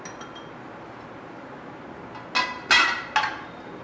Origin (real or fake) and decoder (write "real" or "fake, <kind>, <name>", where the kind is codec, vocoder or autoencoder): real